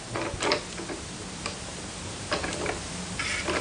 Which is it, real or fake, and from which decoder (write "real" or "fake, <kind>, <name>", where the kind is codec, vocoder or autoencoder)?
real